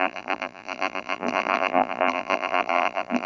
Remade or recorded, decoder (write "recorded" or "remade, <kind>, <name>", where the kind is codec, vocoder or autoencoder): remade, vocoder, BigVGAN v2